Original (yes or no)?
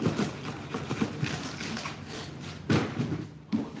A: yes